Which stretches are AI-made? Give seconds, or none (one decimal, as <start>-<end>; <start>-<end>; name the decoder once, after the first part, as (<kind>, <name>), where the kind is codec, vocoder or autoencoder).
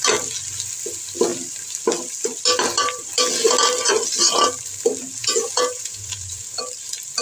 5.2-6.6 (vocoder, Vocos)